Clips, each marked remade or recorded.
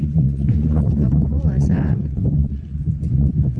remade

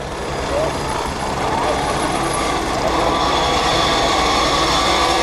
remade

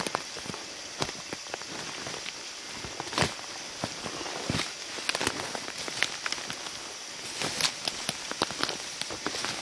recorded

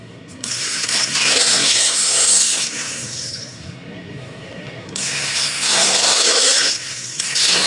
remade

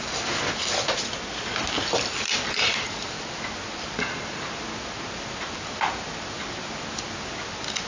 recorded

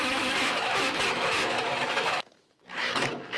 remade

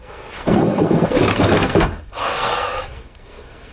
remade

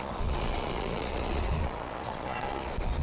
remade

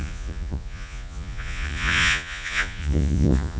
remade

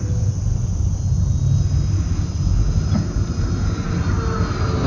recorded